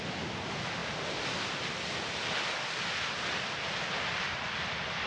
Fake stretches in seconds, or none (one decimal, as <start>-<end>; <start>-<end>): none